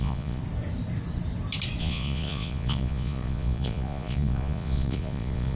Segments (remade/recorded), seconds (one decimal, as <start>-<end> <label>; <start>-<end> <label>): 0.0-0.4 remade; 0.4-1.8 recorded; 1.8-5.6 remade